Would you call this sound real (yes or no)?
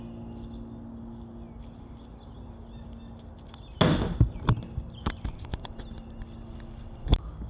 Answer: yes